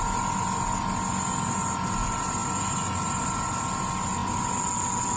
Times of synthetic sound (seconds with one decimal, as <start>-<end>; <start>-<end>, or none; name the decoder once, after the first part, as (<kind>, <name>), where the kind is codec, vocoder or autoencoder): none